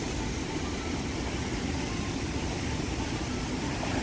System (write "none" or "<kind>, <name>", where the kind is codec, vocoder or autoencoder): none